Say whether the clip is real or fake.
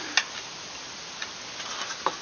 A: real